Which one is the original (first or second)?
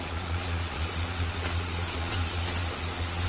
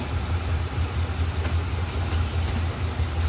second